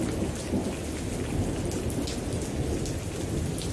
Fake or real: real